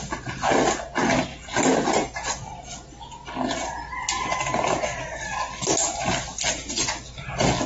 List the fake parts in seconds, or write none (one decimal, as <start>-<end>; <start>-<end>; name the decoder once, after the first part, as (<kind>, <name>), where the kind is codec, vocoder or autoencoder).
none